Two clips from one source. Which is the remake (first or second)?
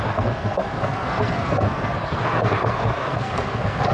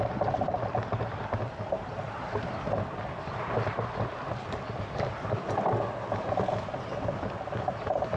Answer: first